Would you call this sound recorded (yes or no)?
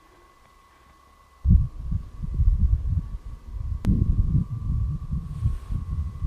yes